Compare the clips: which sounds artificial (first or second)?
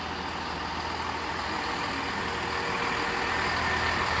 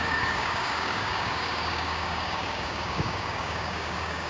second